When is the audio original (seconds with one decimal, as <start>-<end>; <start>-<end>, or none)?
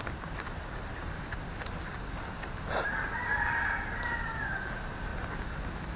0.0-6.0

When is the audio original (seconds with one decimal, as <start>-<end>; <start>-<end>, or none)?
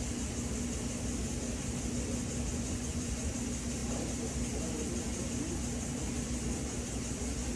0.0-2.5; 3.3-7.6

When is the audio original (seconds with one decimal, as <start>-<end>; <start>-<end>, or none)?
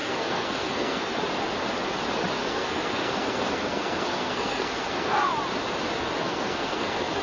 1.1-2.4; 5.3-6.2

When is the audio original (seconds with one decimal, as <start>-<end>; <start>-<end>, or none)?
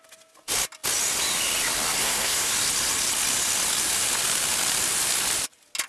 0.0-2.0; 2.5-5.9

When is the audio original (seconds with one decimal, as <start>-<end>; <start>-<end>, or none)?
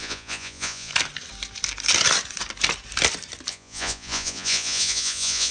0.9-3.5